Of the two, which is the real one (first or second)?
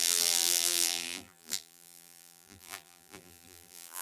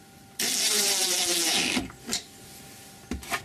second